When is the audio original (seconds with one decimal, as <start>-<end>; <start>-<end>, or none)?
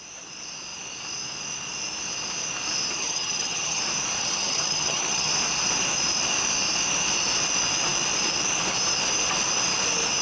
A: 0.0-3.0; 3.8-4.2; 5.3-10.2